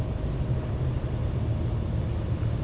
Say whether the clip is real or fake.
real